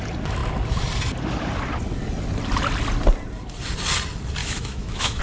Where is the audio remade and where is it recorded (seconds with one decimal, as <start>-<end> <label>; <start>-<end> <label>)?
0.0-4.4 recorded; 4.4-5.2 remade